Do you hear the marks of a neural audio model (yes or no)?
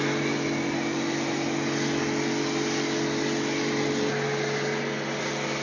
no